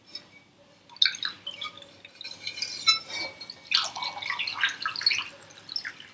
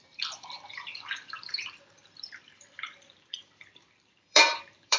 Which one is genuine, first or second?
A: first